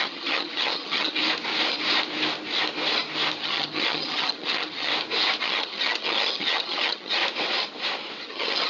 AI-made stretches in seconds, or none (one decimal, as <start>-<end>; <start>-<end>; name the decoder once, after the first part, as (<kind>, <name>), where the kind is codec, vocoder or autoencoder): 0.0-1.2 (vocoder, HiFi-GAN); 3.4-4.9; 5.4-7.2; 8.2-8.7